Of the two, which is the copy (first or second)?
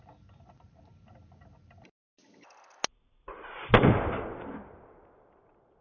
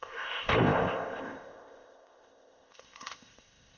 second